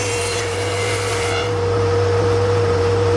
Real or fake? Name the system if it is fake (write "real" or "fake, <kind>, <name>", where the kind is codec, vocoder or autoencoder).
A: fake, vocoder, BigVGAN v2